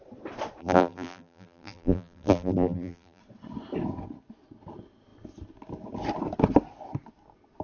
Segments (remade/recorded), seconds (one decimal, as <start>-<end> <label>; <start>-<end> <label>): 0.0-0.6 recorded; 0.6-3.2 remade; 3.2-7.6 recorded